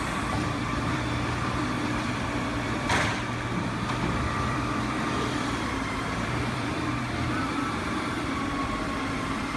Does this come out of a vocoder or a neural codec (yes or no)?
yes